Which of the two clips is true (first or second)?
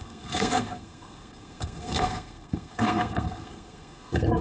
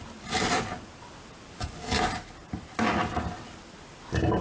second